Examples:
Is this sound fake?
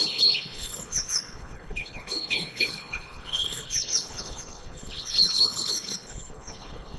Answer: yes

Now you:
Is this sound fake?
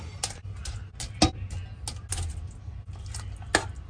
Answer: no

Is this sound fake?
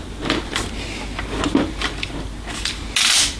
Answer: no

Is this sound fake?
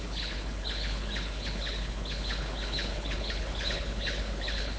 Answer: yes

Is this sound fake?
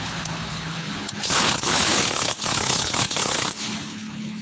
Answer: yes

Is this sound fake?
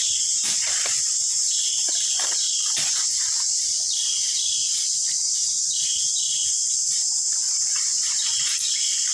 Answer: no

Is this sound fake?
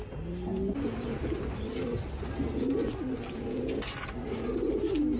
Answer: no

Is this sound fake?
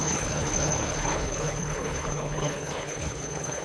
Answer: yes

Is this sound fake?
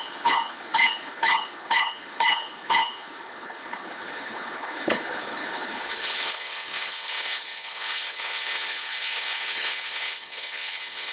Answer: yes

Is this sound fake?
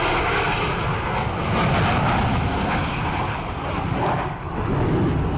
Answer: no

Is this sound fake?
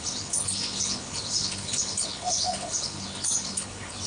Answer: yes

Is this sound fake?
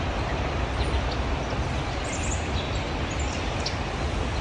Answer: no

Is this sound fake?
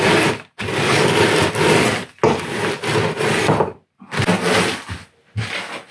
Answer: no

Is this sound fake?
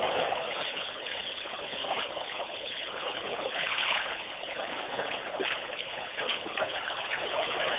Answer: yes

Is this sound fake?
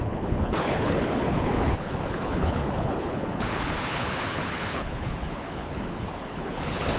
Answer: yes